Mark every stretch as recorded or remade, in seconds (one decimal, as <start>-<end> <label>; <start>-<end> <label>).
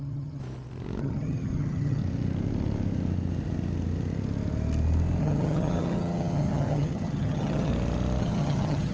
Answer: 0.0-0.4 remade; 0.4-1.0 recorded; 1.0-2.0 remade; 2.0-5.2 recorded; 5.2-7.7 remade; 7.7-8.2 recorded; 8.2-8.9 remade